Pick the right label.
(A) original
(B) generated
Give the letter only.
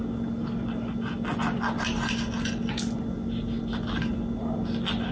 A